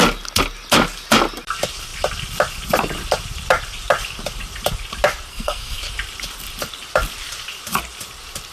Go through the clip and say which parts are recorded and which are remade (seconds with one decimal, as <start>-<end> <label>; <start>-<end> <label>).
0.0-5.3 recorded; 5.3-5.8 remade; 5.8-8.5 recorded